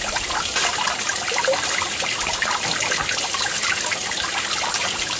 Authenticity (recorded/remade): recorded